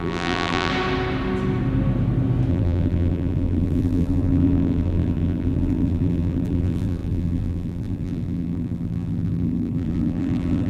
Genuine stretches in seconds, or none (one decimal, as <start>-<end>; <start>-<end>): 0.7-2.5